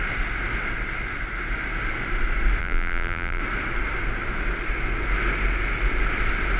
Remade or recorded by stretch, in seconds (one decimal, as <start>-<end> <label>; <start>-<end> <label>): 0.0-2.6 recorded; 2.6-3.4 remade; 3.4-6.6 recorded